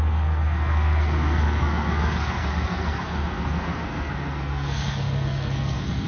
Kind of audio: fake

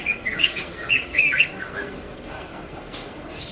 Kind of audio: fake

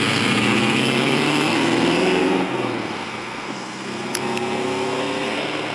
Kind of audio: fake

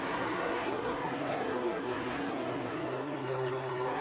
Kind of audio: fake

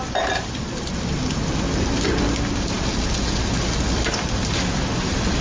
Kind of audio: real